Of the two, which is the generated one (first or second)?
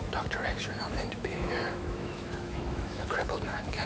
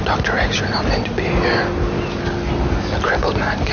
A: first